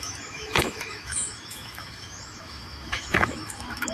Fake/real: fake